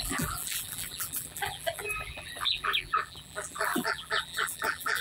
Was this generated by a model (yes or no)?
yes